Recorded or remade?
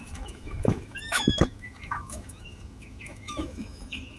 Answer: remade